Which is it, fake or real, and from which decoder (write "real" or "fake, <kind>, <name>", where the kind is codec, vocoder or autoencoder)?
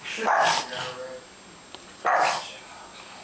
real